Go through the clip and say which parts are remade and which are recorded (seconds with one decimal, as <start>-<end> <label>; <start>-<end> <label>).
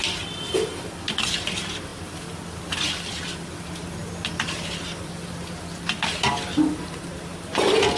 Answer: 0.0-8.0 recorded